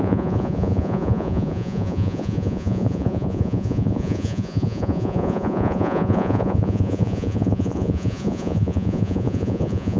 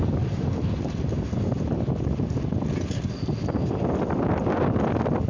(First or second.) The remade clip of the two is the first